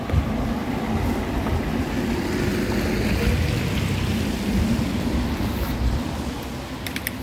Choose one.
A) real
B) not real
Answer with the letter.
A